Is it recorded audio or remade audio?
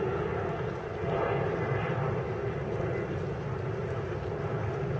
recorded